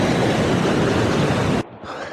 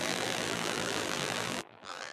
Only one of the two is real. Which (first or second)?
first